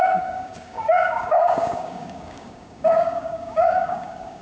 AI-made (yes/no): yes